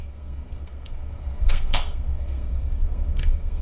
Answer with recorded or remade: remade